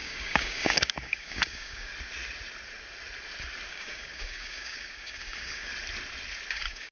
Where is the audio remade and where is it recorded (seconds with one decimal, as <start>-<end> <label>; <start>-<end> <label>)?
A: 0.0-1.9 remade; 1.9-3.7 recorded; 3.7-5.7 remade; 5.7-6.5 recorded; 6.5-6.9 remade